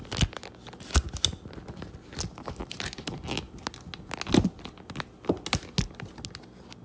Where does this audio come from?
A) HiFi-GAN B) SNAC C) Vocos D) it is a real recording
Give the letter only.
D